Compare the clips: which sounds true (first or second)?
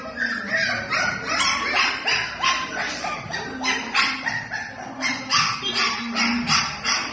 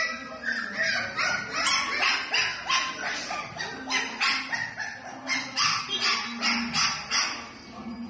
second